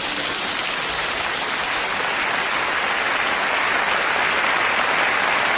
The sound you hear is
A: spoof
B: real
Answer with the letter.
B